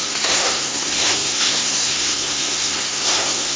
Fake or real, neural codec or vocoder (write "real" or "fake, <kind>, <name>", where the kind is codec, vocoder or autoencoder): fake, codec, SNAC